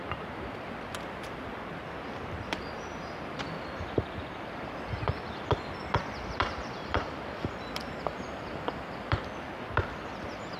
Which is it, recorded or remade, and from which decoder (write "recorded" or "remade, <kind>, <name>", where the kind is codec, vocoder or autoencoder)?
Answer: remade, vocoder, BigVGAN v2